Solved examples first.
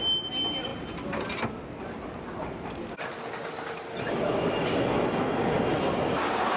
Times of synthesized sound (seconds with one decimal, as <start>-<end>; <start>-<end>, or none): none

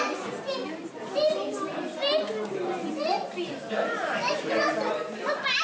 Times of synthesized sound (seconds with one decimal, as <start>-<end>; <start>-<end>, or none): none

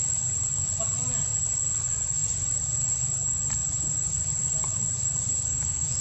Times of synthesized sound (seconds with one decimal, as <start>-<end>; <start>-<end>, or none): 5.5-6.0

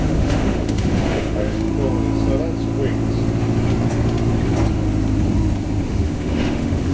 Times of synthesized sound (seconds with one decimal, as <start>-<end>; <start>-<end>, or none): 0.0-1.7; 5.8-6.9

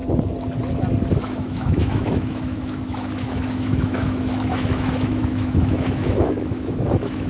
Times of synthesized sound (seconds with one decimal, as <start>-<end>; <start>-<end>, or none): 1.2-7.3

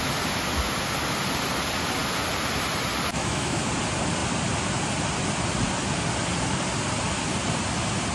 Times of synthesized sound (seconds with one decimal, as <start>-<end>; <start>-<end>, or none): 3.1-3.7

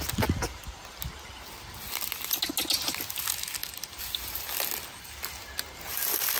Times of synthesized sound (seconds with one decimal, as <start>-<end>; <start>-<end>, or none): none

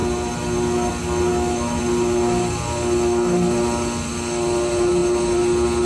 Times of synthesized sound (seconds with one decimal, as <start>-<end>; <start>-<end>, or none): 1.3-1.8